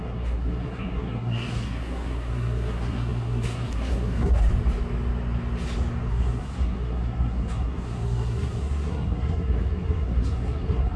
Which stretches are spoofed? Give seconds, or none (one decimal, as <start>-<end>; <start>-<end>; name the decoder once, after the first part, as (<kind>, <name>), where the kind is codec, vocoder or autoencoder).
0.0-4.5 (codec, SNAC); 6.1-11.0